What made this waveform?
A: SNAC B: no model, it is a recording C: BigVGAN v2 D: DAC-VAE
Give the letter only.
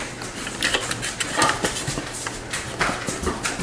B